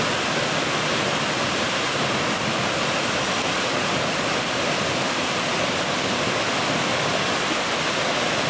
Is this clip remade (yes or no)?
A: no